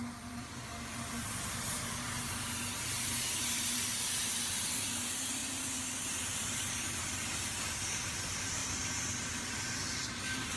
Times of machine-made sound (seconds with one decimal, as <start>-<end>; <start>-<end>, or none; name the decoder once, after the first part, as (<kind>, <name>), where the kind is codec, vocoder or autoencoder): 0.0-0.7 (vocoder, BigVGAN v2); 1.3-10.6